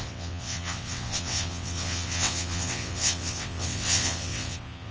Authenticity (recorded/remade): remade